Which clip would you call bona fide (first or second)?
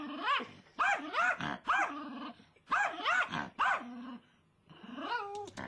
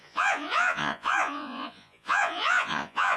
first